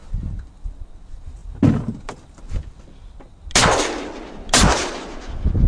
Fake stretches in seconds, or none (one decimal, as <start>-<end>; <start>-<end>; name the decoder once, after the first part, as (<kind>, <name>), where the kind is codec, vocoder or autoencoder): none